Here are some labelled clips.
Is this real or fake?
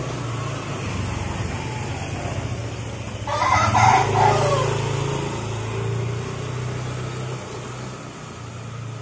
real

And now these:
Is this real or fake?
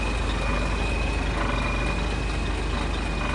real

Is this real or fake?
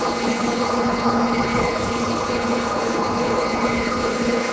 fake